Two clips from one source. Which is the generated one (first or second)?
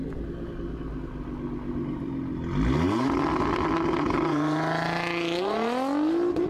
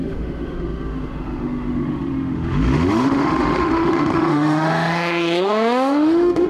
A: second